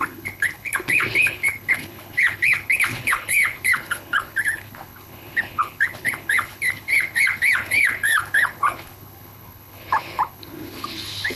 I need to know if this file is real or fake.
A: fake